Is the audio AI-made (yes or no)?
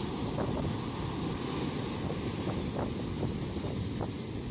no